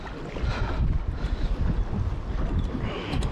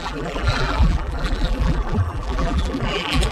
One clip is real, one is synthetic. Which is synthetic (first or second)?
second